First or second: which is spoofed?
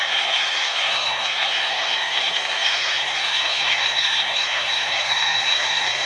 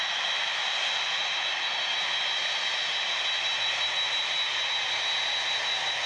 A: first